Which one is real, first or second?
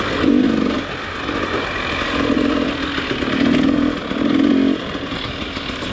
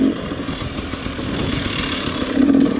first